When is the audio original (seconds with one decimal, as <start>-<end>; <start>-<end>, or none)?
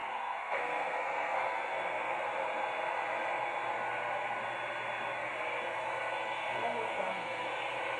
2.2-6.2; 7.5-8.0